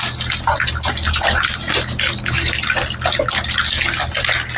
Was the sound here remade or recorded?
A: recorded